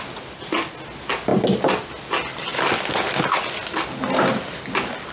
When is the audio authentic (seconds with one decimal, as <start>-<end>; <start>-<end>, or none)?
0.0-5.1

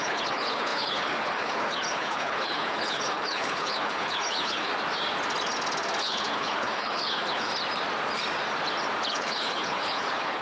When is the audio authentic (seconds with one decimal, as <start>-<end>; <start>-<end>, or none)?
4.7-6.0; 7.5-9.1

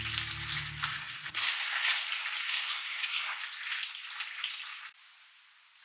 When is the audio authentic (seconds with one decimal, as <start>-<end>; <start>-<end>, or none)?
0.0-0.9; 2.0-2.4; 3.4-5.8

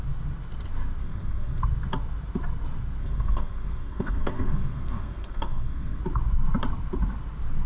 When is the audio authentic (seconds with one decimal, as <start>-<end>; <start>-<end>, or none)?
0.0-1.0; 1.6-3.0; 6.0-7.7

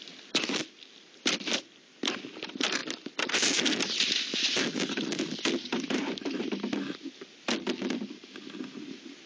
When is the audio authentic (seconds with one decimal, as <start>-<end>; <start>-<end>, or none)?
0.0-9.3

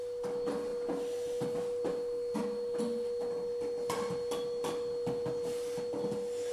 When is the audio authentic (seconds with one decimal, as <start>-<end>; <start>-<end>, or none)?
0.0-6.5

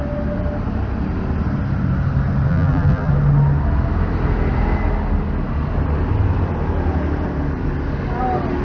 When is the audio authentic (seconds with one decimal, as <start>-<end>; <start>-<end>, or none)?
0.0-2.5; 3.1-8.6

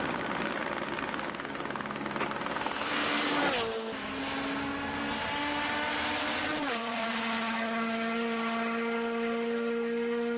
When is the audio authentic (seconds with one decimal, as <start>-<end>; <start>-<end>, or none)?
0.0-6.5; 7.2-10.4